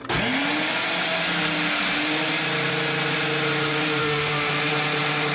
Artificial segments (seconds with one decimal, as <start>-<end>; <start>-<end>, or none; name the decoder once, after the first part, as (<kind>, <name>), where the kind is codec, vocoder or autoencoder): 4.0-4.5 (autoencoder, DAC-VAE)